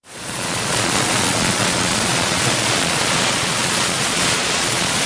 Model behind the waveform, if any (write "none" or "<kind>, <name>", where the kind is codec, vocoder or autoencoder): vocoder, Vocos